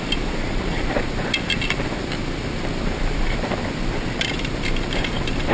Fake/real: real